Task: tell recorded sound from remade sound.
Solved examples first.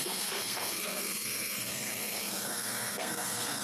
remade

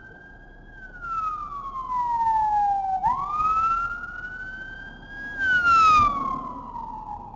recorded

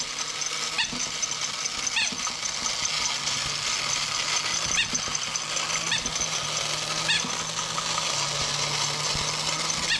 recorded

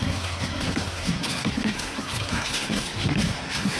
remade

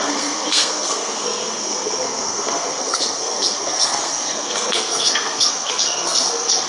remade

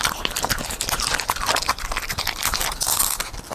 recorded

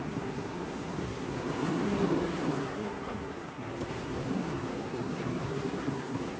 remade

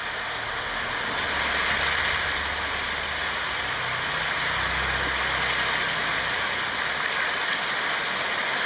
recorded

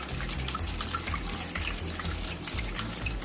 recorded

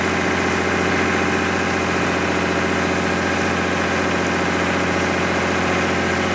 recorded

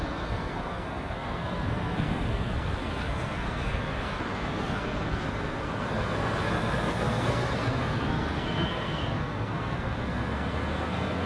remade